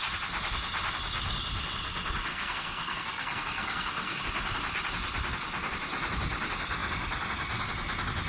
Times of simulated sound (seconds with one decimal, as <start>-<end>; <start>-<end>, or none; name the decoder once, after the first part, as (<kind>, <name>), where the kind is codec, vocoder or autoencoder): 2.3-4.2 (codec, SNAC)